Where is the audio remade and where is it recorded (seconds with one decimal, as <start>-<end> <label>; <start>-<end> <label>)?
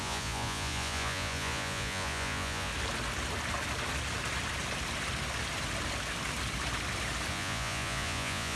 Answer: 0.0-2.7 remade; 2.7-7.3 recorded; 7.3-8.6 remade